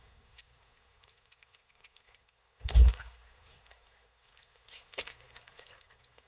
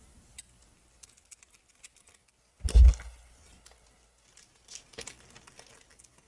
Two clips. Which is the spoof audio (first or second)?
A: first